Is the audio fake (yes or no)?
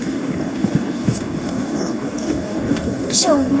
yes